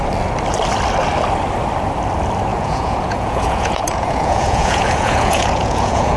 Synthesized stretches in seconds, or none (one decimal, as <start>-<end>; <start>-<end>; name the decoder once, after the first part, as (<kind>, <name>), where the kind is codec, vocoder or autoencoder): 2.5-6.2 (vocoder, Vocos)